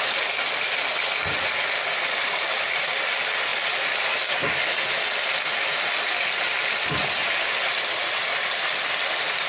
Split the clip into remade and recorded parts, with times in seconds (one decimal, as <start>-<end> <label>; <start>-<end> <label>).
0.0-9.5 recorded